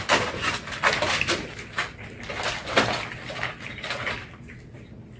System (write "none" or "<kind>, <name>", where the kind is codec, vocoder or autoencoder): none